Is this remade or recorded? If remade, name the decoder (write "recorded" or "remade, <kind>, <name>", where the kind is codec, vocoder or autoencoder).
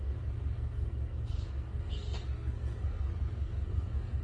remade, codec, SNAC